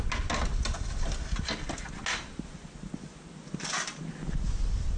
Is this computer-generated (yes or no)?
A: no